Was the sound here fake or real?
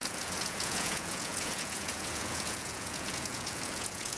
fake